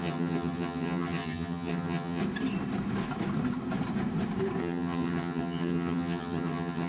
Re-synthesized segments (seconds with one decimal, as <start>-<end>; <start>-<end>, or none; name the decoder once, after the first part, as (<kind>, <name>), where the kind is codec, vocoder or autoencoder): 0.0-2.2 (vocoder, HiFi-GAN); 4.6-6.9